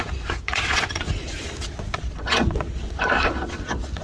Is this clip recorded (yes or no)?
no